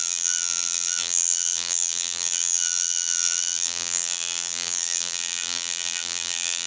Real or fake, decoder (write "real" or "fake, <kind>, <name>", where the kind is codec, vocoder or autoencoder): fake, vocoder, BigVGAN v2